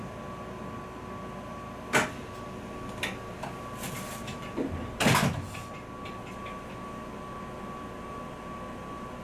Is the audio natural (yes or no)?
yes